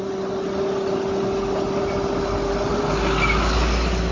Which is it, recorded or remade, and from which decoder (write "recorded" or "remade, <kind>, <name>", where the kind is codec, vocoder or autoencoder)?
recorded